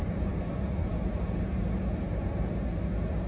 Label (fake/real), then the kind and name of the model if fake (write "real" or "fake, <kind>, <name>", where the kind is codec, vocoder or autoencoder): real